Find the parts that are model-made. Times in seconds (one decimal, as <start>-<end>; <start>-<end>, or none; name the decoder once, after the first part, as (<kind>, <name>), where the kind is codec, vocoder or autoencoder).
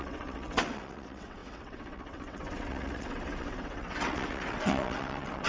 0.0-5.5 (vocoder, WaveNeXt)